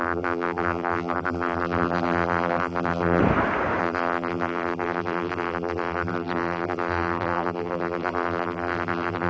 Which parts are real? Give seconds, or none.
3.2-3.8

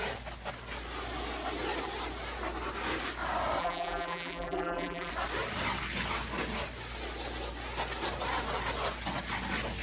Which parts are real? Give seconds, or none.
0.0-3.6; 5.1-9.8

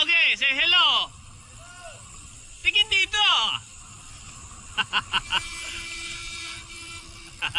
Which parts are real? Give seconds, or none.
0.0-2.6; 4.3-5.6

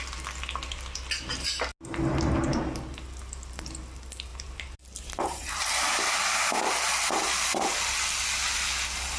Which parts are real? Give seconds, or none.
0.0-4.3; 5.6-9.2

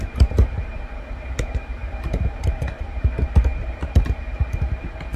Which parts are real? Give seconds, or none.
none

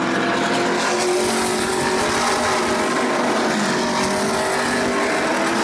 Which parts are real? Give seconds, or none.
0.0-1.5; 2.0-5.6

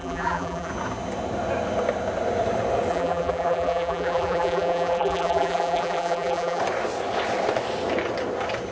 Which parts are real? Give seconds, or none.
0.7-2.9; 6.6-8.7